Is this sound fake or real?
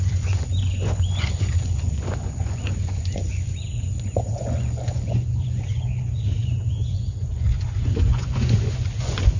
fake